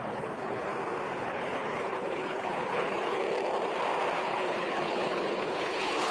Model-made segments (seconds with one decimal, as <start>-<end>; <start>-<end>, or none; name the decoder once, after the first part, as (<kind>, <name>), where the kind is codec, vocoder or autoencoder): 0.0-0.7 (codec, HILCodec); 1.2-3.2; 4.2-6.1